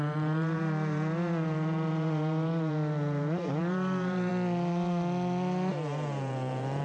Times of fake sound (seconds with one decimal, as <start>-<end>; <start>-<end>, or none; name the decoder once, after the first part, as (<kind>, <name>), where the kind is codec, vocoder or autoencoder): 0.0-4.3 (vocoder, BigVGAN v2); 5.7-6.8